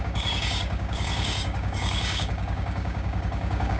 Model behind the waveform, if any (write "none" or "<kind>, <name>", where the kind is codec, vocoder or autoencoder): codec, DAC